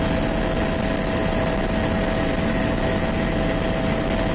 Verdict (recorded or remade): recorded